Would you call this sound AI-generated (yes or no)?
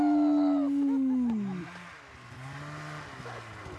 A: no